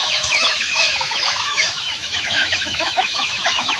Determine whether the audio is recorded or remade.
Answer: remade